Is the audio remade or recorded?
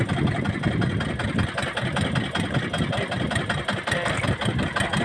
recorded